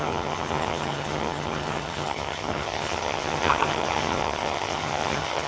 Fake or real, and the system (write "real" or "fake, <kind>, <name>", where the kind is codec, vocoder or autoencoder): fake, vocoder, HiFi-GAN